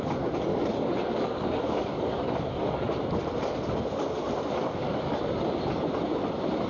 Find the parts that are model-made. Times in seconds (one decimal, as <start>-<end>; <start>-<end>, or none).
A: 0.5-3.0; 4.6-5.2